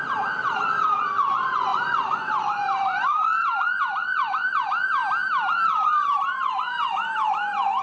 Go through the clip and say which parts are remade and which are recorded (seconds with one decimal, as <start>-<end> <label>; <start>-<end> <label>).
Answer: 0.0-5.0 remade; 5.0-5.6 recorded; 5.6-7.8 remade